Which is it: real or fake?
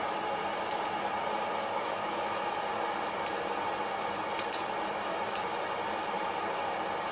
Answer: real